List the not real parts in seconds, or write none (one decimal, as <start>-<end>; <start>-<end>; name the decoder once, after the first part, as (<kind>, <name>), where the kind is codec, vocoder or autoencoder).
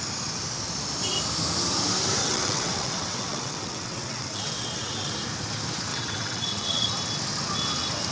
2.2-5.1 (vocoder, WaveNeXt); 5.9-6.9